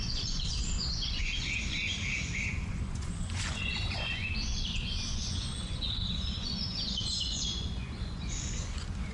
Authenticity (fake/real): fake